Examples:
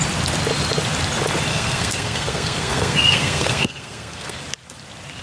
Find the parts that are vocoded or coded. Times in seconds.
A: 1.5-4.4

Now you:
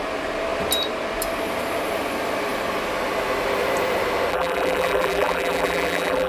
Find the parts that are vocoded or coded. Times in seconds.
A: 4.3-6.3

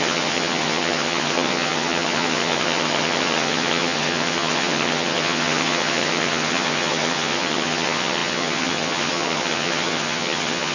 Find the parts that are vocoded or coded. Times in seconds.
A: 0.0-10.7

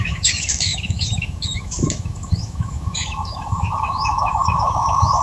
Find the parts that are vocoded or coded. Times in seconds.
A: 0.0-5.2